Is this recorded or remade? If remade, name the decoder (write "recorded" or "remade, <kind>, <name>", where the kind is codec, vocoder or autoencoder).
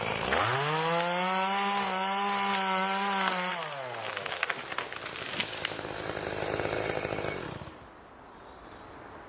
recorded